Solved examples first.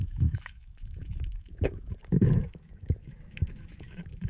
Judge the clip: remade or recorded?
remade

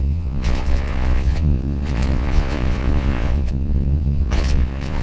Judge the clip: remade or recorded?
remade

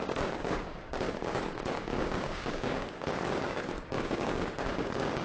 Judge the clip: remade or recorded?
remade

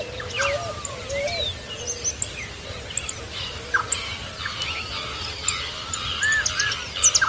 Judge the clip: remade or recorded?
recorded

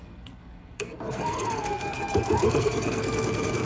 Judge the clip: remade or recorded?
remade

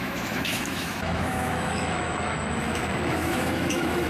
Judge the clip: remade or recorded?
remade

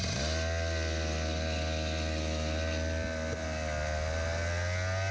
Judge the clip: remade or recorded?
recorded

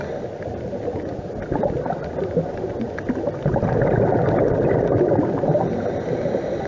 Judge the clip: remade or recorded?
recorded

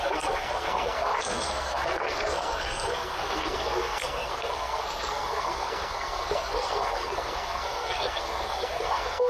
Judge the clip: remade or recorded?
remade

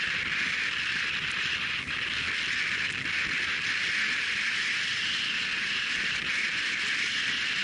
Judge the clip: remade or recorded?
recorded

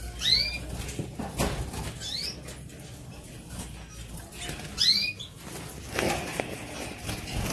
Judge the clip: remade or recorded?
recorded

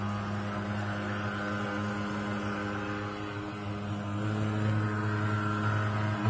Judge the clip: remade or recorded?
recorded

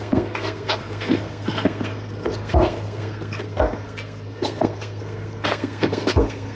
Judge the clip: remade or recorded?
remade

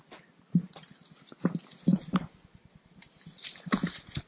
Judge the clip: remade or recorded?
recorded